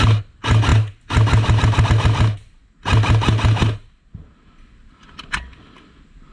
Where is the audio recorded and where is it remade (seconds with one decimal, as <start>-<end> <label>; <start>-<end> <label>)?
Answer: 0.0-6.3 recorded

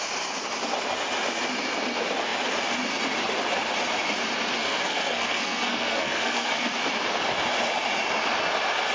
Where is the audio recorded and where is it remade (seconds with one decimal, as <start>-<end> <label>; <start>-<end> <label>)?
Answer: 0.0-4.6 recorded; 4.6-6.8 remade; 6.8-8.9 recorded

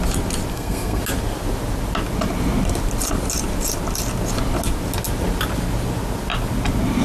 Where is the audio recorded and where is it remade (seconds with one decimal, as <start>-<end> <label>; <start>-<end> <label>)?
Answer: 0.0-0.5 recorded; 0.5-1.0 remade; 1.0-7.0 recorded

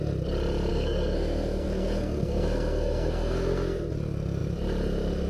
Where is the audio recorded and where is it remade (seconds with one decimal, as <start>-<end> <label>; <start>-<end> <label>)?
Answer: 0.0-0.7 recorded; 0.7-3.9 remade; 3.9-5.3 recorded

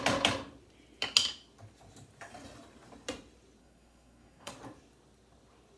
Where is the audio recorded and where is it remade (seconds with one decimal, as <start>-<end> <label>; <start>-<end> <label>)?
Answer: 0.0-3.6 recorded; 3.6-4.5 remade; 4.5-5.8 recorded

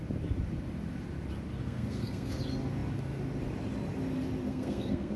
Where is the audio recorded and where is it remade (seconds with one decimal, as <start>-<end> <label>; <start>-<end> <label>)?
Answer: 0.0-1.6 recorded; 1.6-2.4 remade; 2.4-4.5 recorded; 4.5-5.2 remade

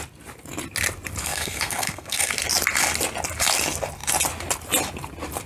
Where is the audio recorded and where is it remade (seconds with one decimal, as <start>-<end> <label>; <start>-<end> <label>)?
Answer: 0.0-1.2 recorded; 1.2-2.3 remade; 2.3-5.5 recorded